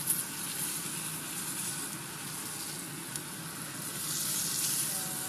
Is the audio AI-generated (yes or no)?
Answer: no